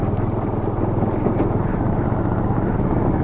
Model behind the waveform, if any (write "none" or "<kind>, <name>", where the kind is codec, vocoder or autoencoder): none